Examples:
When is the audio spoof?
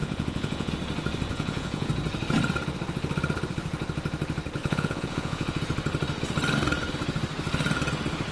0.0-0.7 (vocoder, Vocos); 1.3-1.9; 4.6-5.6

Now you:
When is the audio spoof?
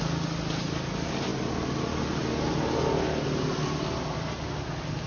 none